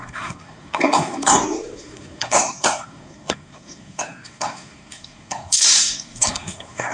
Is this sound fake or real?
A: fake